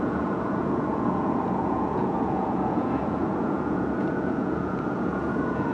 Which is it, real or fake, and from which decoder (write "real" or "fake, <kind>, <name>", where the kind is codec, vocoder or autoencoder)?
fake, vocoder, Vocos